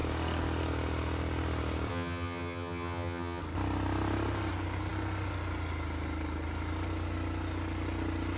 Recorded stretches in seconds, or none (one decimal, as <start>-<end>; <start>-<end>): 0.0-1.9; 3.4-8.4